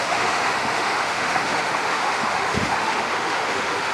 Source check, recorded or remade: remade